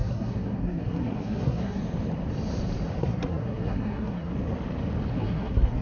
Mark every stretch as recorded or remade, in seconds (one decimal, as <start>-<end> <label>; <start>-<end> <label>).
0.0-1.8 remade; 1.8-3.0 recorded; 3.0-4.3 remade; 4.3-5.1 recorded; 5.1-5.8 remade

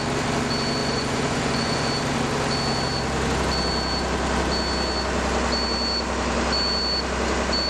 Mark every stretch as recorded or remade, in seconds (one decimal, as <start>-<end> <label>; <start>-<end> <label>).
0.0-0.8 recorded; 0.8-1.9 remade; 1.9-7.7 recorded

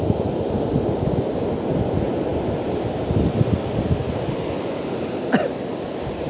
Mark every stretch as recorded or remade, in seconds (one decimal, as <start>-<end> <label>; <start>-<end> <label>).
0.0-6.3 recorded

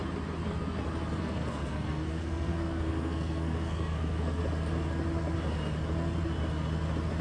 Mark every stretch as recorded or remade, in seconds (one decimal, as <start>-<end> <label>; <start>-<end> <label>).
0.0-1.2 recorded; 1.2-4.4 remade; 4.4-7.2 recorded

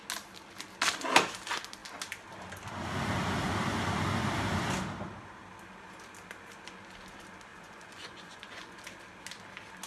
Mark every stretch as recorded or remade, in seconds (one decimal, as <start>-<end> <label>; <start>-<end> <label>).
0.0-7.5 recorded; 7.5-8.8 remade; 8.8-9.9 recorded

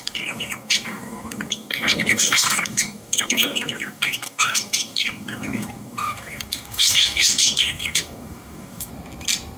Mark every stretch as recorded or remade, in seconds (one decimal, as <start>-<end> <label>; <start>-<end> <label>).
0.0-8.9 remade; 8.9-9.6 recorded